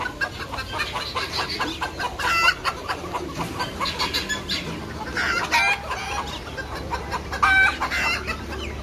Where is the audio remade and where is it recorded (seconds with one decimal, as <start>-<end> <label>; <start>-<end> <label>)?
0.0-2.6 recorded; 2.6-3.9 remade; 3.9-8.8 recorded